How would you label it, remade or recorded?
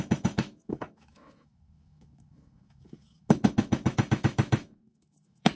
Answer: remade